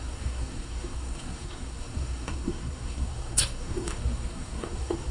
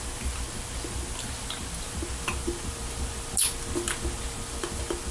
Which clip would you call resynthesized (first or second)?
first